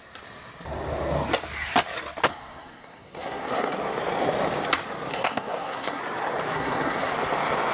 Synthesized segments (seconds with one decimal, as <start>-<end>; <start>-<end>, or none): 2.3-3.8; 5.1-6.0; 6.5-7.1